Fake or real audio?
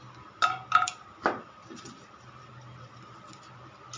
real